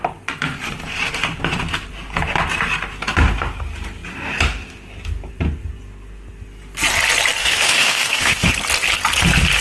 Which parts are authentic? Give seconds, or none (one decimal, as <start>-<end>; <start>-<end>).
0.0-7.4; 8.5-9.6